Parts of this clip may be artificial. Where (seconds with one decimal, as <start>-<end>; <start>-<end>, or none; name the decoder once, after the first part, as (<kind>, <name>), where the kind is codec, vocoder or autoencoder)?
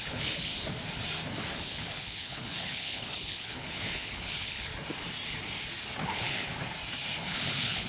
0.0-0.5 (codec, HILCodec); 1.6-4.7; 6.0-6.5; 7.3-7.9